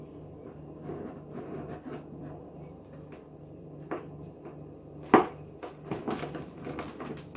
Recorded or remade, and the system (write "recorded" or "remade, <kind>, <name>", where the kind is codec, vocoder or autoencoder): recorded